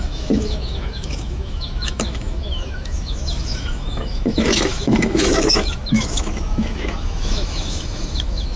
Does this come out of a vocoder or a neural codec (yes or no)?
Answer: yes